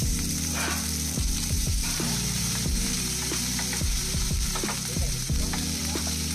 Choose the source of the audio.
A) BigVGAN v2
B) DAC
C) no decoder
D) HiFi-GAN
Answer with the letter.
A